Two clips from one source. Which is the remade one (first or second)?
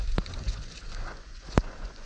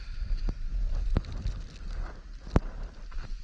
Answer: first